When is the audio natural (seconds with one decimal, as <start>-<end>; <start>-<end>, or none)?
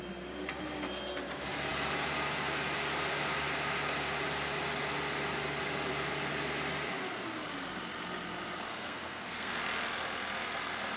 0.0-8.7; 9.6-11.0